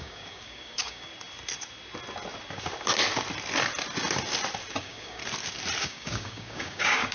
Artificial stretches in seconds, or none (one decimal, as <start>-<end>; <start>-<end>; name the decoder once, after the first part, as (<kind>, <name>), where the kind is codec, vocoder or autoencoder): 0.0-1.1 (codec, DAC); 4.8-5.2; 5.8-7.1